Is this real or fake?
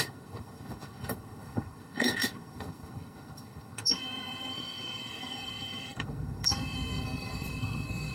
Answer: fake